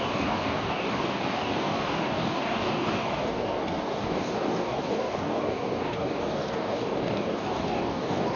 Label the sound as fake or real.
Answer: fake